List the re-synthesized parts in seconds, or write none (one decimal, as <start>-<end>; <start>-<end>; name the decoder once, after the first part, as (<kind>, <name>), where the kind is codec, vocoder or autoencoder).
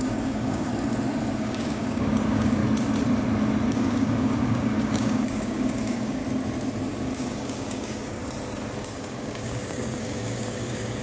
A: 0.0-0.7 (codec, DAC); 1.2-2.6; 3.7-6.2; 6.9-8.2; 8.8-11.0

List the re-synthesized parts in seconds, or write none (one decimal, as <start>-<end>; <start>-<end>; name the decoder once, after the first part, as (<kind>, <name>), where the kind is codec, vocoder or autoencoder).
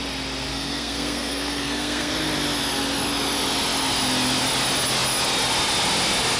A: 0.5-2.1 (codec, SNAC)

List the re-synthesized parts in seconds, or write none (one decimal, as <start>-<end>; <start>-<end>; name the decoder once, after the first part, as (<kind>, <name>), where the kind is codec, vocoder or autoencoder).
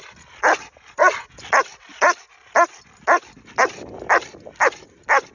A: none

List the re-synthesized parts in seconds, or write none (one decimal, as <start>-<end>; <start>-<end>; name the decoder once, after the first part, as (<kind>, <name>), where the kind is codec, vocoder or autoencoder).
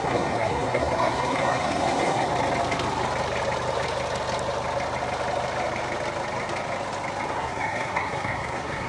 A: 0.0-2.3 (codec, SNAC); 7.3-8.9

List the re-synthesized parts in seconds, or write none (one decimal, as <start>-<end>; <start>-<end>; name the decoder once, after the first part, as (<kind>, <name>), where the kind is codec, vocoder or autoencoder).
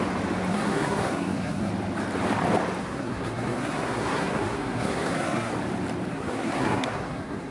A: 0.5-1.7 (codec, SNAC); 2.8-5.5; 6.1-7.5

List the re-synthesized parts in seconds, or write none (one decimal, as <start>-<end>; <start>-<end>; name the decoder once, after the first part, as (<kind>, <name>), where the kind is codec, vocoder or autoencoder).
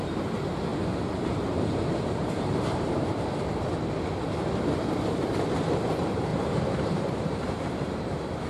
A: 0.7-3.3 (vocoder, BigVGAN v2); 6.3-7.9